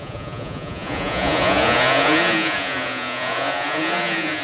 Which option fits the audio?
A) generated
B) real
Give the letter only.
A